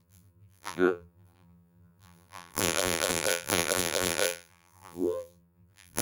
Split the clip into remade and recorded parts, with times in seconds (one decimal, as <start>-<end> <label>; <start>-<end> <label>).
0.0-6.0 remade